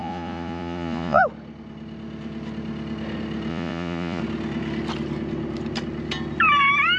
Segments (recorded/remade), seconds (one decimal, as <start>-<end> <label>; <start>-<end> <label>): 0.0-1.2 remade; 1.2-3.5 recorded; 3.5-4.2 remade; 4.2-7.0 recorded